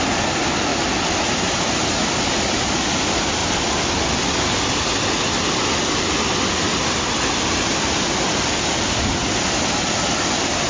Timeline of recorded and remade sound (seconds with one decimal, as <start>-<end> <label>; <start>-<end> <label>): 0.0-10.7 recorded